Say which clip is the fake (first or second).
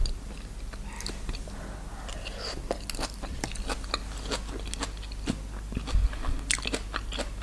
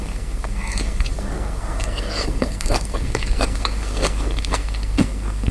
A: second